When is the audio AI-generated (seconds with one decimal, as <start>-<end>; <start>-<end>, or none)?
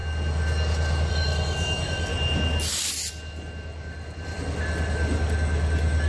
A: 1.1-2.1